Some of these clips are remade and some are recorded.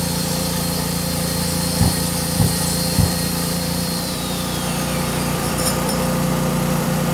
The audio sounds remade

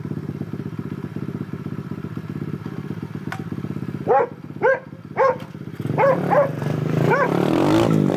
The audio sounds recorded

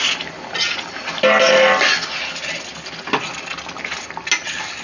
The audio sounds recorded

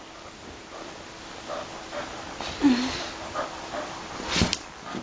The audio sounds recorded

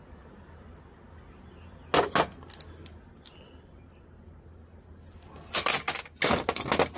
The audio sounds recorded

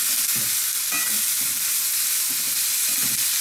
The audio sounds recorded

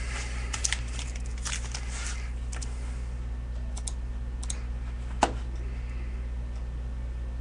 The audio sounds recorded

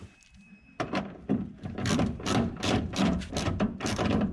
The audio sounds remade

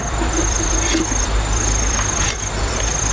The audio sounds remade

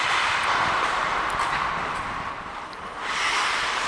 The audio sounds remade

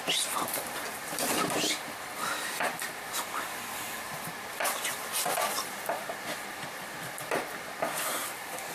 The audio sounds remade